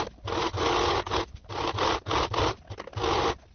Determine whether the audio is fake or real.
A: real